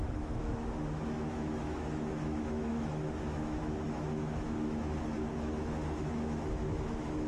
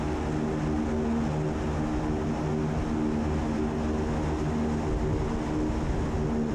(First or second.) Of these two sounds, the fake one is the first